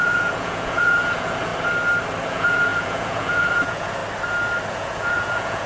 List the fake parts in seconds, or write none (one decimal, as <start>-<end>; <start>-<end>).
0.0-1.5; 2.3-4.0; 4.7-5.7